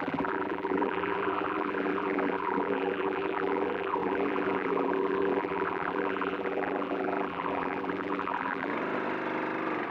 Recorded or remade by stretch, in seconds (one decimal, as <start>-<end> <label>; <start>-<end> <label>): 0.0-8.7 remade; 8.7-9.9 recorded